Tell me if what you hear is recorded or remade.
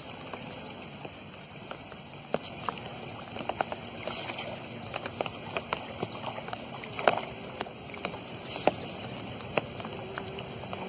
recorded